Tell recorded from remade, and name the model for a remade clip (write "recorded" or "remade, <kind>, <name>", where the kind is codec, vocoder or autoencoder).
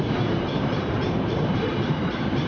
remade, vocoder, BigVGAN v2